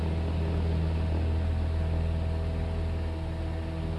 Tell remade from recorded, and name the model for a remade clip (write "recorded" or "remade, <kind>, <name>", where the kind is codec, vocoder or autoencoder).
recorded